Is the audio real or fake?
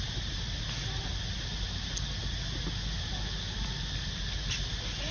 real